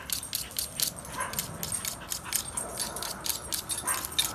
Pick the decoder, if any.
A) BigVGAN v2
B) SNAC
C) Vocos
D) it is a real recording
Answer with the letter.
D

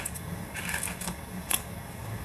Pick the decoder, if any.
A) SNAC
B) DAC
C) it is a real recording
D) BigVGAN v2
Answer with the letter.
B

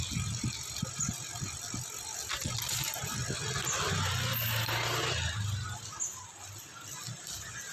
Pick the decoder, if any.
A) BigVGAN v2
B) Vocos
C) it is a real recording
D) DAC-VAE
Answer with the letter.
C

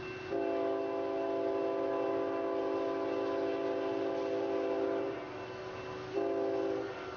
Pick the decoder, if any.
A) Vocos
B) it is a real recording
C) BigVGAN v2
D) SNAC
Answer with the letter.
B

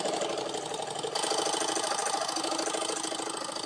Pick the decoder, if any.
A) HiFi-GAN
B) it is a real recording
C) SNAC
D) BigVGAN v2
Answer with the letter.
B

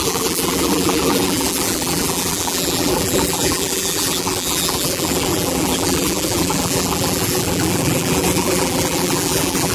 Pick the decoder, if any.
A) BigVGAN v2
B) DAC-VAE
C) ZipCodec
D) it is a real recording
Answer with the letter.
A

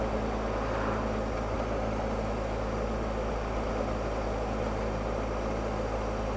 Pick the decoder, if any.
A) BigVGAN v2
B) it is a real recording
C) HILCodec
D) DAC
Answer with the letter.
B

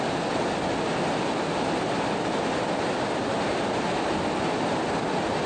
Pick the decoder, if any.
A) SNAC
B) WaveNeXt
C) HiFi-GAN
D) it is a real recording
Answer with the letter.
D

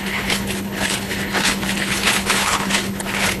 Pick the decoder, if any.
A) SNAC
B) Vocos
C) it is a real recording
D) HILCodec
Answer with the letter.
D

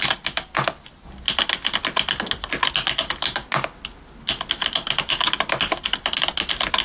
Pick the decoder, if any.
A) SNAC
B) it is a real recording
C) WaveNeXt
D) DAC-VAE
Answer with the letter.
B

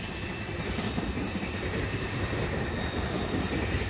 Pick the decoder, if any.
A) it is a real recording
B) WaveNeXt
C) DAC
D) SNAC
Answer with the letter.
A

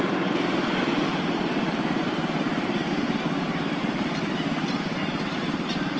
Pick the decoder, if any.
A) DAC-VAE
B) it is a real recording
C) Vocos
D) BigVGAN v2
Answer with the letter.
B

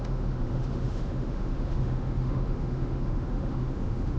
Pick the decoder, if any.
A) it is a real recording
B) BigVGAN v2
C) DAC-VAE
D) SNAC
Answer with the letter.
C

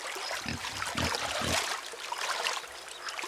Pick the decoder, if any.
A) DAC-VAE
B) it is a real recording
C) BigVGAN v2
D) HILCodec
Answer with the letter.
B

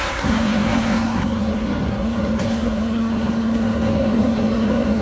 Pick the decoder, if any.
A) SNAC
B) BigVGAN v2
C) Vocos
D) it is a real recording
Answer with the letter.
A